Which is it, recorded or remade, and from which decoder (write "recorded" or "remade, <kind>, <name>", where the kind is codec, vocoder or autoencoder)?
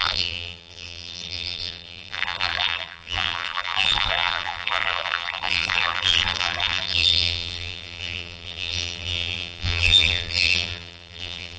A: remade, vocoder, BigVGAN v2